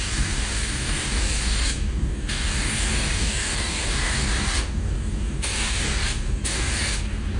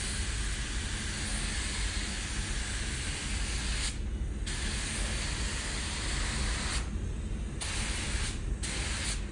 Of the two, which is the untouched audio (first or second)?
second